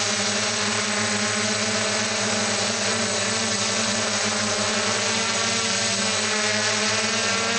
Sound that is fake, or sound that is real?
real